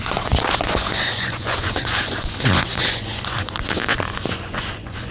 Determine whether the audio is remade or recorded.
remade